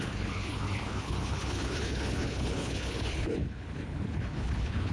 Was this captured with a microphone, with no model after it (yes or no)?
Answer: no